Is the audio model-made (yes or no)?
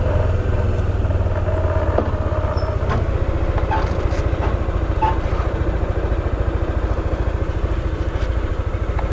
no